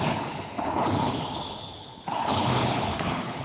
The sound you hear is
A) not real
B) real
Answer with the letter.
A